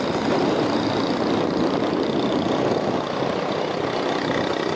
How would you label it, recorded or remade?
recorded